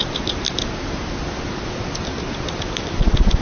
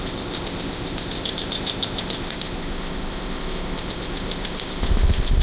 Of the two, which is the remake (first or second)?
second